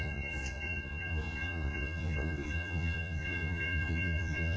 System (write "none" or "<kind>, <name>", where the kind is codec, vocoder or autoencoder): vocoder, Vocos